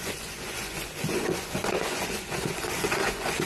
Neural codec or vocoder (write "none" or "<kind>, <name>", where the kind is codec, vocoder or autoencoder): vocoder, Vocos